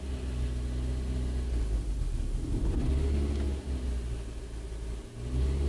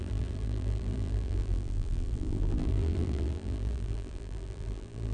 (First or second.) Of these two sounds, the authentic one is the first